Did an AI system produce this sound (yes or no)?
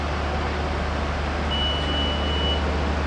no